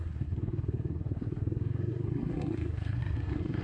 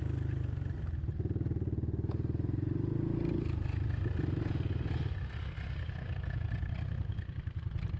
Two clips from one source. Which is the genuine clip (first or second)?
second